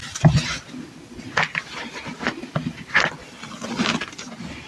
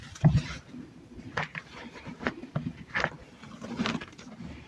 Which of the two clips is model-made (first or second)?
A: second